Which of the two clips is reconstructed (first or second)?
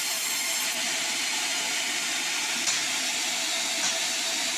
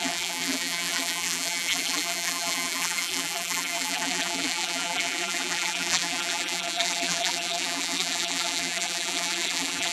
second